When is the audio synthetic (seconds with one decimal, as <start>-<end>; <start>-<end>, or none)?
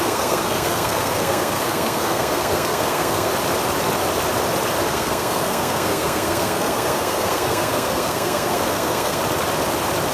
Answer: 0.0-3.3; 4.9-9.2